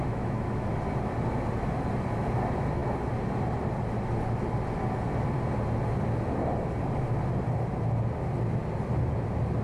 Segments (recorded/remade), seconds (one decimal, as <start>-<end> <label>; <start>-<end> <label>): 0.0-0.7 remade; 0.7-9.6 recorded